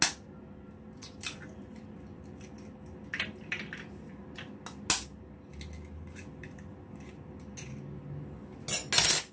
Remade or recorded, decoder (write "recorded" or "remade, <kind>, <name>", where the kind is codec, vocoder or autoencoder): recorded